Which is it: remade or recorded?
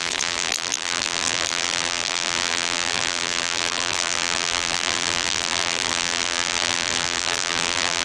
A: remade